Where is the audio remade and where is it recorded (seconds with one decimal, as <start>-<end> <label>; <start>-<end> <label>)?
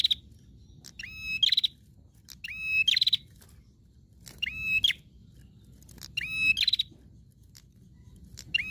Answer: 0.0-8.7 recorded